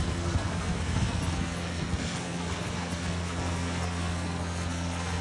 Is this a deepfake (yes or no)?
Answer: yes